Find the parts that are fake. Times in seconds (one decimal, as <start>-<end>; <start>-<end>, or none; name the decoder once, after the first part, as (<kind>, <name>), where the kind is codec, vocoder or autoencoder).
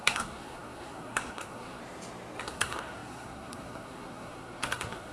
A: 0.0-1.8 (codec, SNAC); 2.4-5.1